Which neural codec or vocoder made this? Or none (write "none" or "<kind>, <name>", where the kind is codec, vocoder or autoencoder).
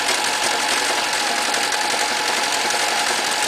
none